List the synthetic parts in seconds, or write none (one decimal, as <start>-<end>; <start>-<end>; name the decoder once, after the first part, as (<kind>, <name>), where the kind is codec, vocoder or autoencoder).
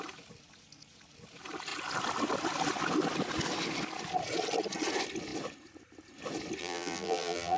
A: 6.6-7.6 (vocoder, BigVGAN v2)